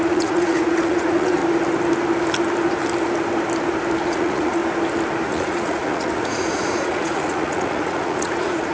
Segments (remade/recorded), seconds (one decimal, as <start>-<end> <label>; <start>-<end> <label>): 0.0-1.4 remade; 1.4-4.0 recorded; 4.0-4.6 remade; 4.6-5.3 recorded; 5.3-8.7 remade